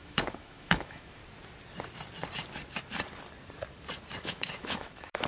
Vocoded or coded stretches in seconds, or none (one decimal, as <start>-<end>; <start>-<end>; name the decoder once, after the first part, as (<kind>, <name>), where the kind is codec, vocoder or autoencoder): 0.0-1.2 (autoencoder, DAC-VAE); 4.2-5.3